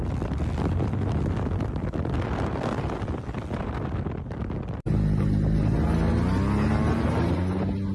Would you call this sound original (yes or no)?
yes